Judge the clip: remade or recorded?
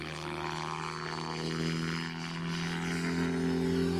recorded